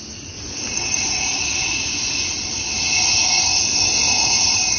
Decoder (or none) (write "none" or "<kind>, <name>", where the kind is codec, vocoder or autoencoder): none